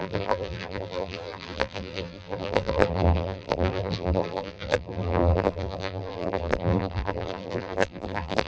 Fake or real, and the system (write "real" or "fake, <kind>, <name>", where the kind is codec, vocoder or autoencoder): fake, vocoder, BigVGAN v2